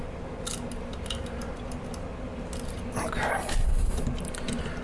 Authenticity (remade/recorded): recorded